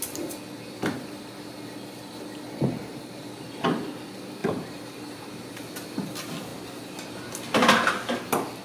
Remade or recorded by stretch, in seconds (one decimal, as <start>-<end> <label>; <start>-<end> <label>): 0.0-4.4 recorded; 4.4-5.6 remade; 5.6-8.6 recorded